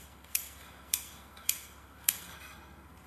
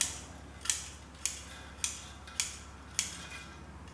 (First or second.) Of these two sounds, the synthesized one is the first